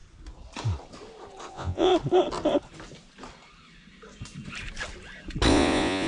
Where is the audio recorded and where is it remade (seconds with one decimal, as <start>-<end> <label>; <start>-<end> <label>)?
0.0-1.5 recorded; 1.5-1.9 remade; 1.9-5.5 recorded; 5.5-6.1 remade